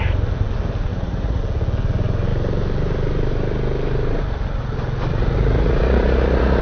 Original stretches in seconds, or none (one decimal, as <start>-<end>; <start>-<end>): 0.0-0.9; 1.4-5.1